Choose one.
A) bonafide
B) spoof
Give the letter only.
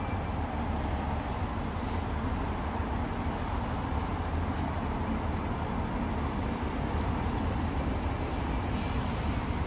A